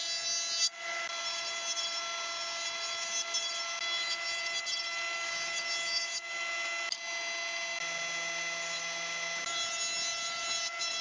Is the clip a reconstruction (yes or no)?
no